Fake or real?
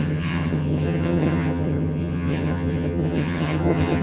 fake